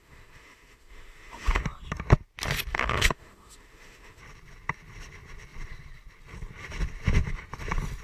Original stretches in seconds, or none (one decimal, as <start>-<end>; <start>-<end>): 1.6-2.7; 4.2-8.0